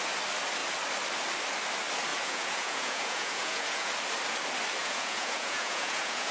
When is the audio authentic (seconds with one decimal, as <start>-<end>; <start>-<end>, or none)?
0.0-2.1; 3.9-4.8